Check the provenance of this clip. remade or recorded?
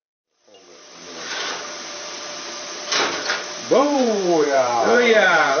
remade